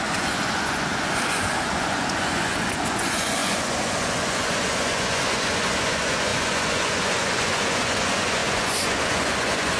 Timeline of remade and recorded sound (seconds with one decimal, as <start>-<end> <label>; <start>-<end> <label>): 0.0-9.8 remade